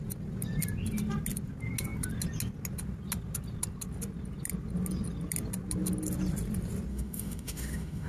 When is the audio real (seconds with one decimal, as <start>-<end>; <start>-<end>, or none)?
0.0-6.9